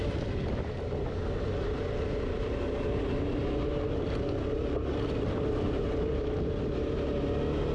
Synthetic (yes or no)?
no